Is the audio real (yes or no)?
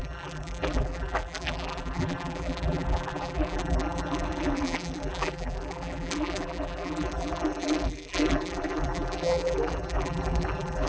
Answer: no